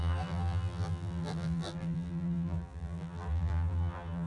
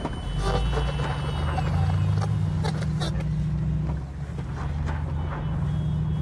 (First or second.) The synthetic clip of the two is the first